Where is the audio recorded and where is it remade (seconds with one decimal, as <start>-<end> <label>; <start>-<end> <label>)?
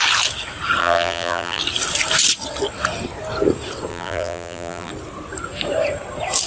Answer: 0.0-0.8 recorded; 0.8-1.6 remade; 1.6-3.9 recorded; 3.9-4.9 remade; 4.9-6.5 recorded